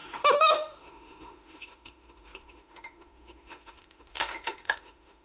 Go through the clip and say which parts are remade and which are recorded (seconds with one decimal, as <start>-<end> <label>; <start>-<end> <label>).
0.0-5.2 remade

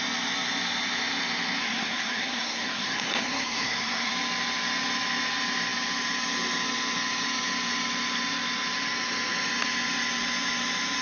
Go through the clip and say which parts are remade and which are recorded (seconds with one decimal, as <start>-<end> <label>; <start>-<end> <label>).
0.0-1.6 recorded; 1.6-4.1 remade; 4.1-11.0 recorded

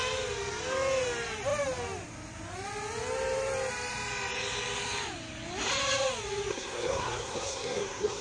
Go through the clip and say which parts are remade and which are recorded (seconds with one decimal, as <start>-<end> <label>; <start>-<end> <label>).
0.0-6.5 recorded; 6.5-8.2 remade